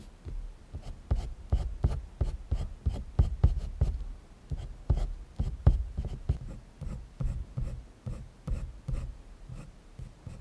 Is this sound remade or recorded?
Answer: recorded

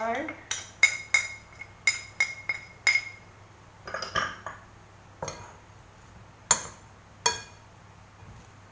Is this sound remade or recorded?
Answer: recorded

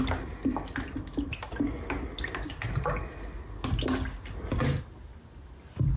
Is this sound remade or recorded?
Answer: recorded